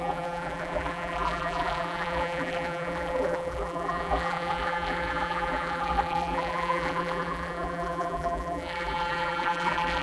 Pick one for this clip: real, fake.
fake